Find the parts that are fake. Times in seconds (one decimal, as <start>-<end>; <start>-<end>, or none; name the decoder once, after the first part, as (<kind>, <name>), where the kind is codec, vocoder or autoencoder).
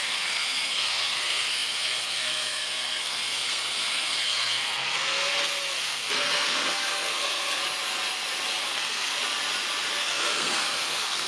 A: 0.0-7.6 (codec, SNAC); 8.6-9.1; 10.0-11.3